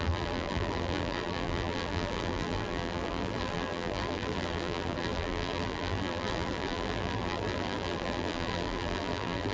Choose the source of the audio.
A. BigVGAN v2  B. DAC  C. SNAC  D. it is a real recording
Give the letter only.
A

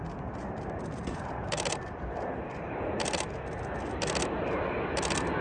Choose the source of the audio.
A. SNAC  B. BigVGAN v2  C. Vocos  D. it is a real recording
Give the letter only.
D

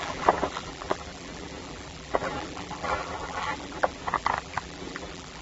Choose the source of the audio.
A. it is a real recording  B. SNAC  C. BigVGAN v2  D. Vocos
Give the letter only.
C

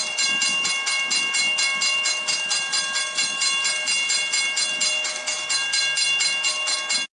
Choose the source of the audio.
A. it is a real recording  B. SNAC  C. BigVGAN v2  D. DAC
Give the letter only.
A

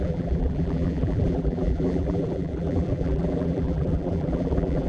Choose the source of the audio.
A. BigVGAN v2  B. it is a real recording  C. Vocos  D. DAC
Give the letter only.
A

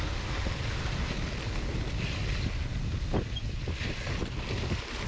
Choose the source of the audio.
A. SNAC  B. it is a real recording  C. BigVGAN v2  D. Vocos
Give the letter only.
B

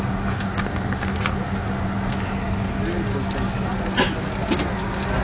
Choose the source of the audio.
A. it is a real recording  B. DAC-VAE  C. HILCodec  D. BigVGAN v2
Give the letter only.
A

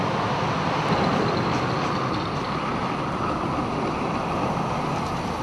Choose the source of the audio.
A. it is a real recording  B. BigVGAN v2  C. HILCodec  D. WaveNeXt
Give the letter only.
B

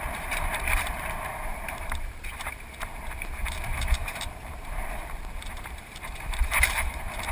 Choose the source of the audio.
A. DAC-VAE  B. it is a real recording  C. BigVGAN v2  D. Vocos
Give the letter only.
C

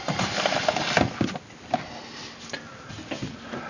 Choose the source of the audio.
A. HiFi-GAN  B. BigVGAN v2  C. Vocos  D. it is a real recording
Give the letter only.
D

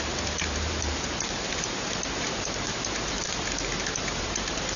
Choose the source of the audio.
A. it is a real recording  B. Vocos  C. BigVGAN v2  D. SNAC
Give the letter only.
C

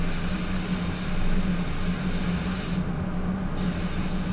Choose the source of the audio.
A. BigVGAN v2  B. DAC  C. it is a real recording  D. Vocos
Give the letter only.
C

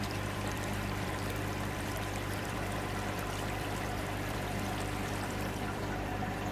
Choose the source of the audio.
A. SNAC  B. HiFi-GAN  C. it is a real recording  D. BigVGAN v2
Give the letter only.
D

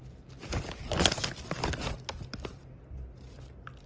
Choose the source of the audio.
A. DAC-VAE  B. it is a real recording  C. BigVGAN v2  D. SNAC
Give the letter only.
B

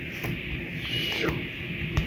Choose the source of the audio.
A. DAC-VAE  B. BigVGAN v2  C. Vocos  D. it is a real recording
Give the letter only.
D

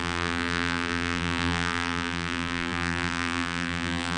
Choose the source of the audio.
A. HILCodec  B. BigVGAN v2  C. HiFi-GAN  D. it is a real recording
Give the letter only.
B